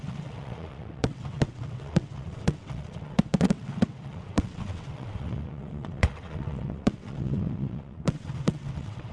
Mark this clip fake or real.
fake